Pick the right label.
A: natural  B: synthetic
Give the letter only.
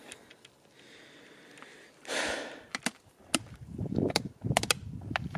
A